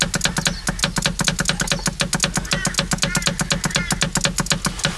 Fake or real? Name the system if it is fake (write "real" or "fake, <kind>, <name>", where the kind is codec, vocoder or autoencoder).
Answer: real